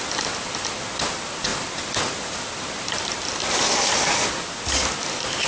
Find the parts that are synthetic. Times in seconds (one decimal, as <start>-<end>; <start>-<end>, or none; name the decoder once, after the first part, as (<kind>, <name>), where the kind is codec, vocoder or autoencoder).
none